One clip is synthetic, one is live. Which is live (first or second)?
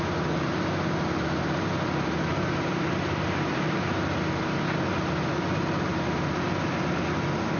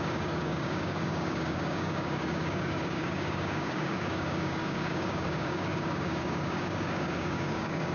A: first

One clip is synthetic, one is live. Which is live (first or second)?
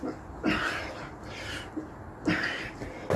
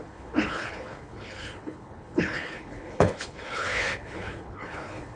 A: first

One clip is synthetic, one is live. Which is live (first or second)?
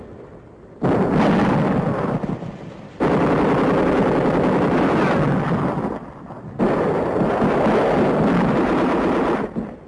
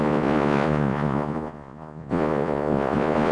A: first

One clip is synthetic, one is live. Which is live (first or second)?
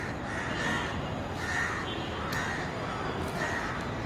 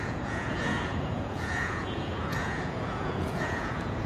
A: first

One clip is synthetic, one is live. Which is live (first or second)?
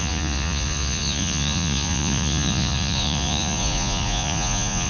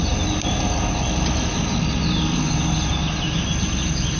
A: second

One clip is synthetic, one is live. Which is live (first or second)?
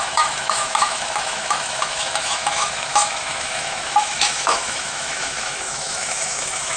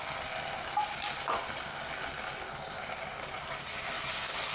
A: second